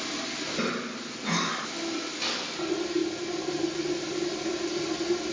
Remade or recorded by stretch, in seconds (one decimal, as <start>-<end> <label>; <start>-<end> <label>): 0.0-5.3 recorded